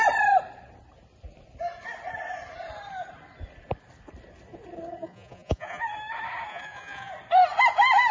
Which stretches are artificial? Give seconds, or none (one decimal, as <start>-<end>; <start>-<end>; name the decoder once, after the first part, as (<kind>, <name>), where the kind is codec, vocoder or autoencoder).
5.0-5.8 (vocoder, Vocos); 6.5-7.1